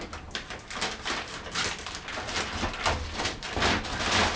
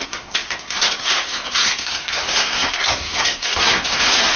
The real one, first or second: first